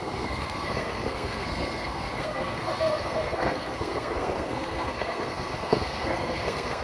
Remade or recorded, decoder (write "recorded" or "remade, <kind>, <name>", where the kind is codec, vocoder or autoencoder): remade, codec, SNAC